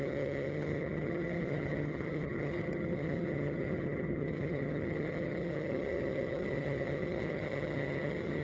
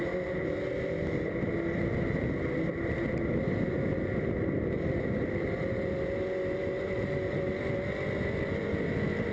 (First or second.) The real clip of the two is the second